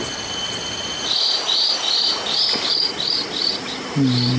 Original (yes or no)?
yes